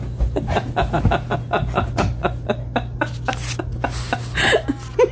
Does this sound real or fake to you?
real